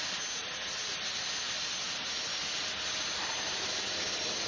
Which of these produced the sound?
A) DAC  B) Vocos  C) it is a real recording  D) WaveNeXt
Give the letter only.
C